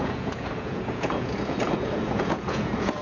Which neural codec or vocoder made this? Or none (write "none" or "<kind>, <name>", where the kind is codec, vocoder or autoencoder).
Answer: vocoder, Vocos